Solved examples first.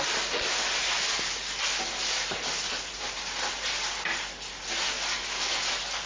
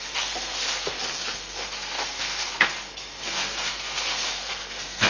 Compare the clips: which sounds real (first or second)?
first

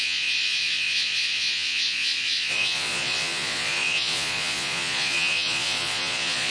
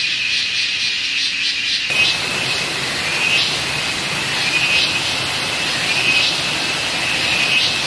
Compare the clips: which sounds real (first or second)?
second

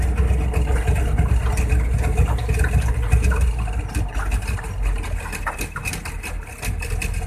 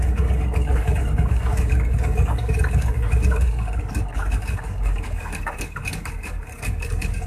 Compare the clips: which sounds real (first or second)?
first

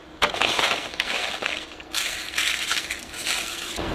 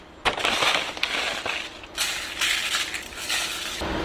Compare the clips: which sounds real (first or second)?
second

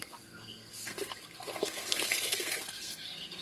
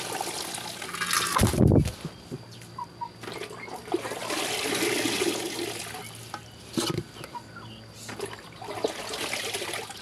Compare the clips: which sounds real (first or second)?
second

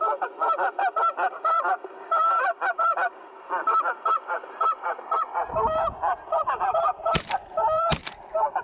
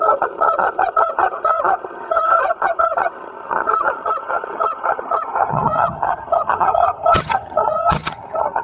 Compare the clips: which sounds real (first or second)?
first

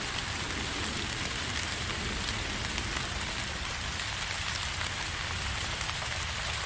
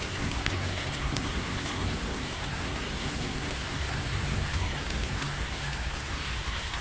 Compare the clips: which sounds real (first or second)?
first